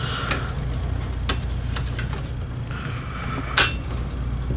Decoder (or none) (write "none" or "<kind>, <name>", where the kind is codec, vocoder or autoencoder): none